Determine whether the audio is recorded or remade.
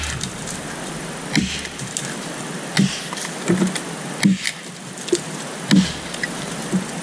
recorded